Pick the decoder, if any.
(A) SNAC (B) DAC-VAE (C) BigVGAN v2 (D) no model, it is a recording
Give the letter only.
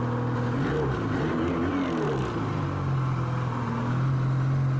D